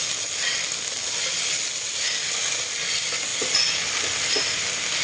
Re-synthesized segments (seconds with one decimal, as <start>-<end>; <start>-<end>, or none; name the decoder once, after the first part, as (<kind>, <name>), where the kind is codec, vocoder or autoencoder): none